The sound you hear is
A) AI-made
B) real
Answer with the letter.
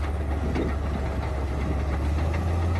B